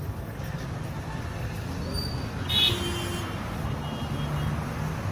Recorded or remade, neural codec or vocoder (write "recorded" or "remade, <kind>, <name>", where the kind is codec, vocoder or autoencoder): recorded